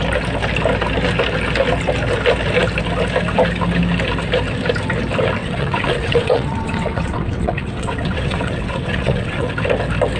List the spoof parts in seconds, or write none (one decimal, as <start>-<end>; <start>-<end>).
5.4-9.5